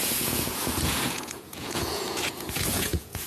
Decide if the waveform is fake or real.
fake